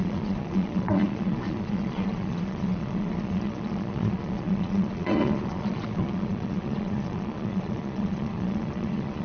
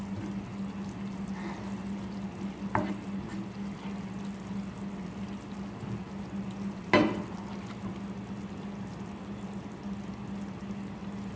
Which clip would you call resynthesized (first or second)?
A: first